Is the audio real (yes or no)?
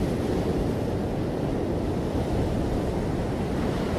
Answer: yes